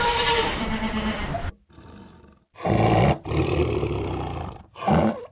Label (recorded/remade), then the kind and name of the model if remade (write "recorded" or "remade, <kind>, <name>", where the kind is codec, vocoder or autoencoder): remade, vocoder, BigVGAN v2